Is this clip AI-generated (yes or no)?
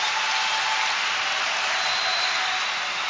no